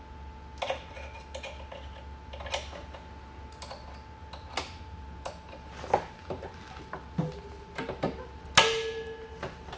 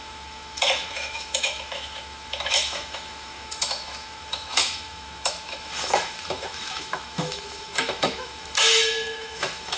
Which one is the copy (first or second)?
second